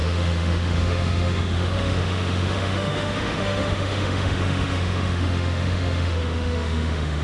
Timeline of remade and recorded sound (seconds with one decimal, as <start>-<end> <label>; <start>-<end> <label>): 0.0-7.2 remade